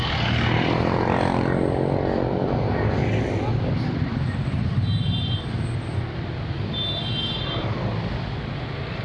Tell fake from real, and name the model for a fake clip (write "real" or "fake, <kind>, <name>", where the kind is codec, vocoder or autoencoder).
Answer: real